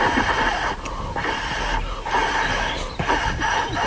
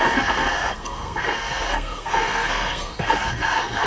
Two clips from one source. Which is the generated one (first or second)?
second